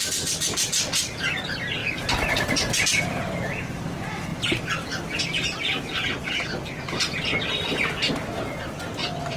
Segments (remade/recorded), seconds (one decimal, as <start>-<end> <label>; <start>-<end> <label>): 0.0-9.4 recorded